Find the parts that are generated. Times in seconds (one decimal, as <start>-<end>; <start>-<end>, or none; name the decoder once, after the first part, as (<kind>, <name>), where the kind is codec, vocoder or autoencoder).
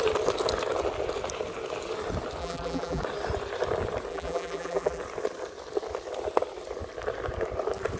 2.4-3.0 (vocoder, BigVGAN v2); 4.1-5.0